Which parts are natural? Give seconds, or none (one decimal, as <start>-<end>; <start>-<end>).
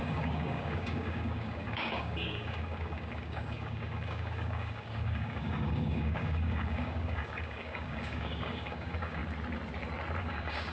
9.2-10.2